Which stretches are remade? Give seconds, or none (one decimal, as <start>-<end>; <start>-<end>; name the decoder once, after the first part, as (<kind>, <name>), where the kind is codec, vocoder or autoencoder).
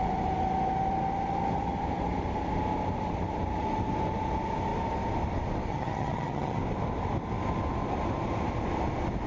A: 5.7-6.6 (vocoder, HiFi-GAN)